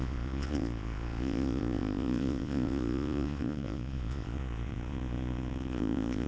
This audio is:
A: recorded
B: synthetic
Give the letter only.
B